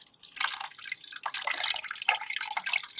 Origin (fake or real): real